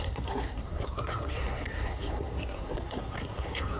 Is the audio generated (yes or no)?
yes